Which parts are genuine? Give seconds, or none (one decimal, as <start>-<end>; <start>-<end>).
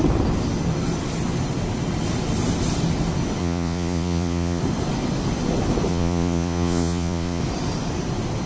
0.0-3.4; 4.6-5.9; 7.4-8.5